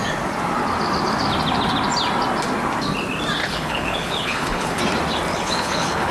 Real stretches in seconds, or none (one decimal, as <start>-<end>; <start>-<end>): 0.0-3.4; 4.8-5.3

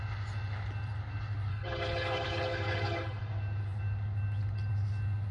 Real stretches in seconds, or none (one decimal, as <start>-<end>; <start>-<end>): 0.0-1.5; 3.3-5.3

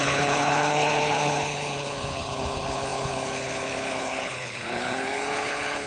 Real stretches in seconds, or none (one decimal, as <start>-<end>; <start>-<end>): none

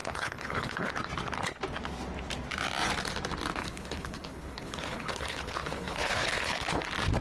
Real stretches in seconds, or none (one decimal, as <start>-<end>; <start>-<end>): 0.9-3.6; 6.8-7.2

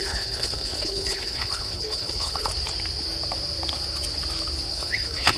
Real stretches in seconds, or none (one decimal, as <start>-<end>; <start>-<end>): 2.5-4.7